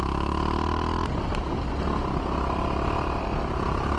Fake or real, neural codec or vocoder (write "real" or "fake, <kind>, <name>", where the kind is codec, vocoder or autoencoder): real